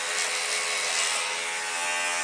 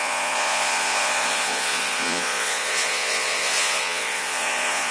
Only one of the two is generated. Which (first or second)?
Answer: second